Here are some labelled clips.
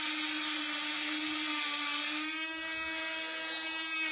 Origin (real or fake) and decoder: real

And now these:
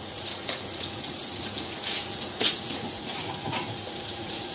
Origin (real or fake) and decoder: fake, vocoder, Vocos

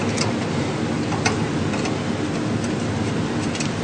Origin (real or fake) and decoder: real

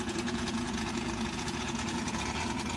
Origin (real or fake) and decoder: fake, vocoder, Vocos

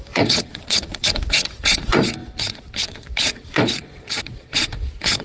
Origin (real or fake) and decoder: fake, vocoder, Vocos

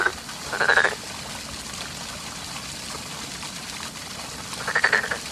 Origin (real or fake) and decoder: real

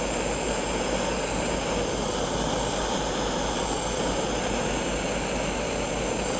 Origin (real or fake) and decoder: real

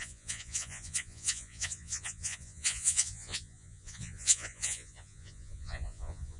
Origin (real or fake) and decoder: fake, vocoder, Vocos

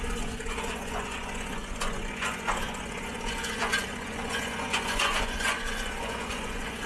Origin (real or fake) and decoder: fake, vocoder, Vocos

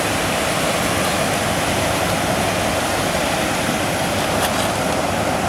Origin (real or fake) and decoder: real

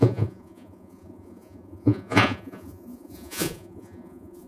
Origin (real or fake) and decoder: fake, vocoder, Vocos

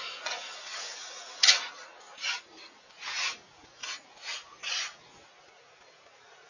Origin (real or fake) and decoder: fake, vocoder, Vocos